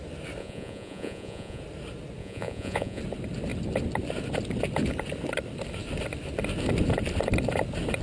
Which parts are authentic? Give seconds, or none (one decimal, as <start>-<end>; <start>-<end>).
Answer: 0.0-0.4; 1.6-2.2; 3.0-8.0